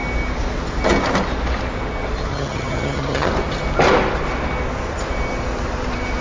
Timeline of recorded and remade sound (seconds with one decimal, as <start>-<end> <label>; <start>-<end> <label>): 0.0-2.3 recorded; 2.3-3.3 remade; 3.3-6.2 recorded